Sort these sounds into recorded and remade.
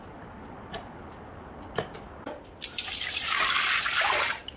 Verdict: recorded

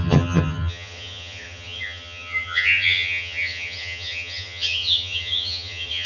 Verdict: remade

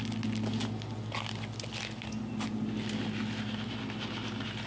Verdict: recorded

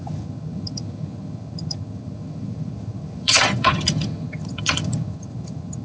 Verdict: remade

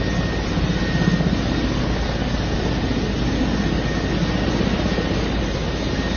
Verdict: recorded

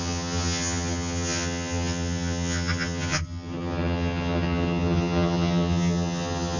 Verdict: remade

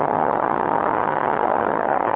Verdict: remade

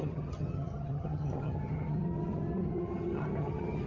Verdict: remade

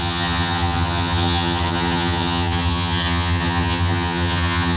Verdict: remade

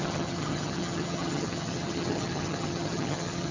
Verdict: remade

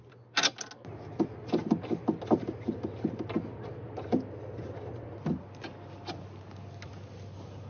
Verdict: recorded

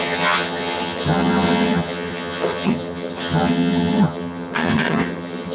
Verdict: remade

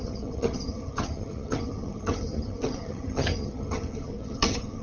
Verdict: remade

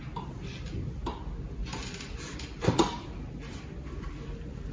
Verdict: recorded